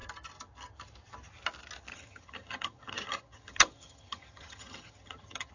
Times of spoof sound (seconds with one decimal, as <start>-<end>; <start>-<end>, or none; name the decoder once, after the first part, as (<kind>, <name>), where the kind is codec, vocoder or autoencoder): 1.9-5.5 (vocoder, HiFi-GAN)